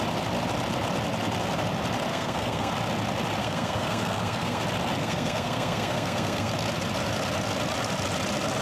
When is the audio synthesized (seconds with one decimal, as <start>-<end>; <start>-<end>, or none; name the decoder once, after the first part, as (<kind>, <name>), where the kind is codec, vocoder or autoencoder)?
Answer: 2.1-2.7 (codec, SNAC); 3.4-4.6; 5.0-6.5